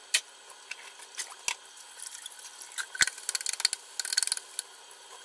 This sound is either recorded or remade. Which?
recorded